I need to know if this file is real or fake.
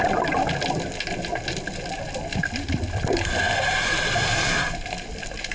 real